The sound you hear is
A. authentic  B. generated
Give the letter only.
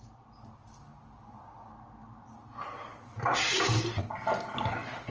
A